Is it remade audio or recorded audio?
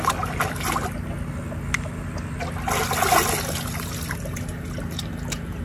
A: recorded